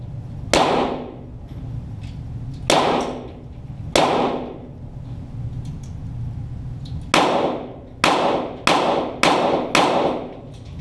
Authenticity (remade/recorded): recorded